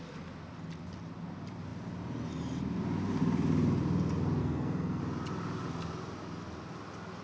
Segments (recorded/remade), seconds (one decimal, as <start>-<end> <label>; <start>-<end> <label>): 0.0-4.4 recorded; 4.4-5.0 remade; 5.0-7.2 recorded